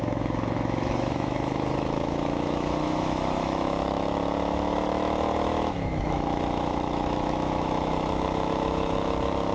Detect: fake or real fake